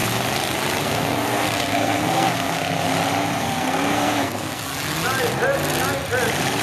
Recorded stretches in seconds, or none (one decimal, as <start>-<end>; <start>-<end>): 0.0-0.8; 2.9-3.4; 4.7-6.6